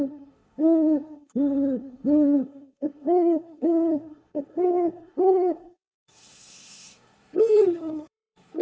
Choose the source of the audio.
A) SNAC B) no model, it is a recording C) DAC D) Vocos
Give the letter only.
A